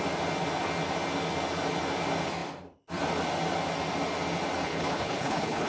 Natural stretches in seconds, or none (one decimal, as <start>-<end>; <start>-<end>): 0.0-4.6